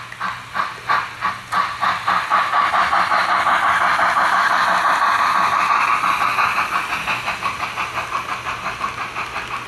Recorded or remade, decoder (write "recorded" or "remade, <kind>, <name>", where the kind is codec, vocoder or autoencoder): recorded